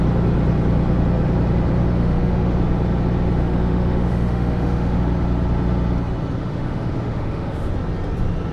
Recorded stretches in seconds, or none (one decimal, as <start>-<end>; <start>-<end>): 0.0-2.0; 2.6-3.4; 5.0-6.4; 7.7-8.5